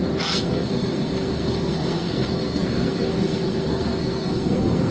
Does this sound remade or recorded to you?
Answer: remade